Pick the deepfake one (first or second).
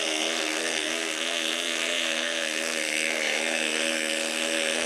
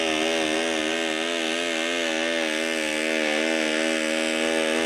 first